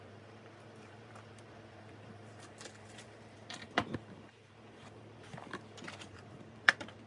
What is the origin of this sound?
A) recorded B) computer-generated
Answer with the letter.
B